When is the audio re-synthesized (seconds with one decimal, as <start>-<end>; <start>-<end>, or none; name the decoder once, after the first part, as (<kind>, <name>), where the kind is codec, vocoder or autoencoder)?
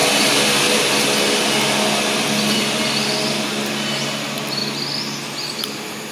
none